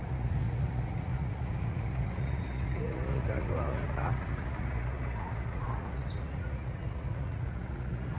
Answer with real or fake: fake